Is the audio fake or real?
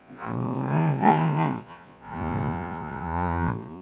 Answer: fake